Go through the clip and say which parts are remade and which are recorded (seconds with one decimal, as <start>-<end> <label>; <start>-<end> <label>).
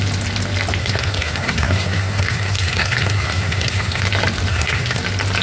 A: 0.0-0.8 recorded; 0.8-4.0 remade; 4.0-4.5 recorded; 4.5-5.0 remade; 5.0-5.4 recorded